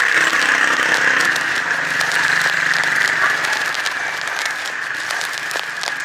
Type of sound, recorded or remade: remade